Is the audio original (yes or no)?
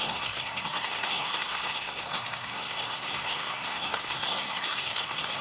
no